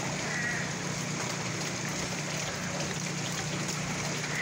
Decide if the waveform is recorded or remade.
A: recorded